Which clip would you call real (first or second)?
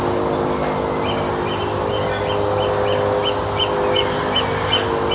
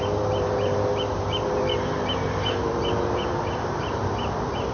first